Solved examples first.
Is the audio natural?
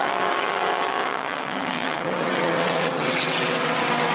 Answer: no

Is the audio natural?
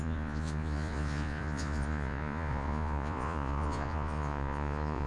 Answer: no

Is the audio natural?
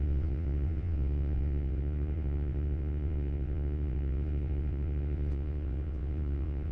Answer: no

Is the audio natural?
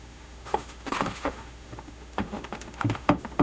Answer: no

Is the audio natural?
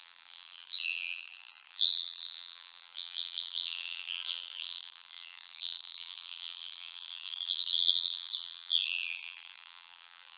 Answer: no